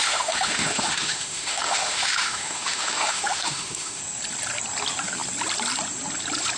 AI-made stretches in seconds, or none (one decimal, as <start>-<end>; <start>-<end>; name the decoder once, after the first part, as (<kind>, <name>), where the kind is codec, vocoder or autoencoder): 0.0-4.0 (autoencoder, DAC-VAE)